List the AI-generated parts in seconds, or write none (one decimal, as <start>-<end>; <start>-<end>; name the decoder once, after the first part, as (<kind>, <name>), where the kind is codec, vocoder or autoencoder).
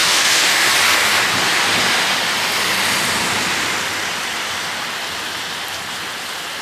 0.0-0.7 (autoencoder, DAC-VAE)